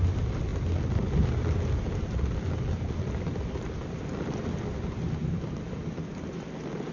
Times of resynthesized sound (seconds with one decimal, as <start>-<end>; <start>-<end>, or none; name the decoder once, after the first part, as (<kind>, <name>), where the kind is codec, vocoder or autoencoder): none